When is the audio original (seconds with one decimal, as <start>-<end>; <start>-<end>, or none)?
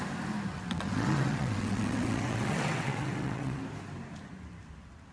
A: 0.0-0.5; 3.6-5.1